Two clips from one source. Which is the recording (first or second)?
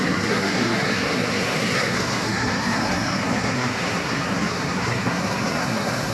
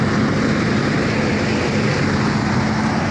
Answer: second